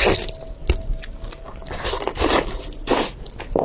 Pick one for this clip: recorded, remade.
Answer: recorded